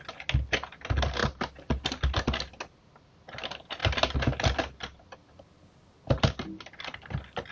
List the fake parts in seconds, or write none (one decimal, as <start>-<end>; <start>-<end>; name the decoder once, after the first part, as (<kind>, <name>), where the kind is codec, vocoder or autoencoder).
none